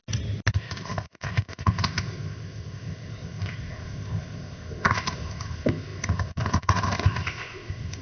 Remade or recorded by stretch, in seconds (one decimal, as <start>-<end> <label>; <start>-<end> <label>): 0.0-0.5 recorded; 0.5-8.0 remade